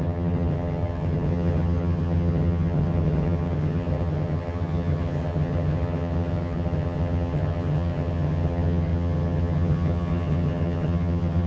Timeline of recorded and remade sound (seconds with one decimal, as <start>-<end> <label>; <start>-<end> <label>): 0.0-11.5 remade

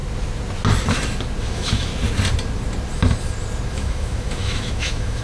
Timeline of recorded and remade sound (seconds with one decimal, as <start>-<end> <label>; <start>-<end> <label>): 0.0-1.4 recorded; 1.4-1.9 remade; 1.9-3.7 recorded; 3.7-5.2 remade